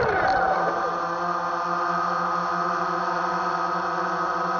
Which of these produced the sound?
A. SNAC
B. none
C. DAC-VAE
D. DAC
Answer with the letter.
B